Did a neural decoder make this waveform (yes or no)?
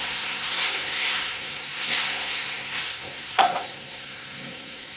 yes